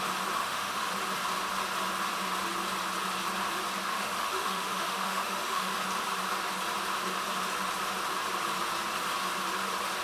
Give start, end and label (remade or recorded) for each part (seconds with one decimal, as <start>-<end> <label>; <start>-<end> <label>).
0.0-0.4 recorded; 0.4-0.9 remade; 0.9-3.9 recorded; 3.9-5.7 remade; 5.7-10.0 recorded